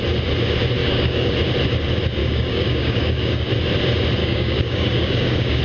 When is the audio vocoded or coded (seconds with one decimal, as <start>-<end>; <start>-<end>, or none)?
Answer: 0.8-1.3; 2.2-3.5; 4.2-5.6